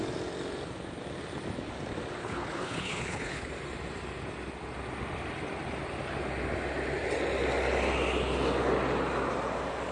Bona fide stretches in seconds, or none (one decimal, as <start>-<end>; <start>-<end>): 0.0-2.2; 3.5-9.9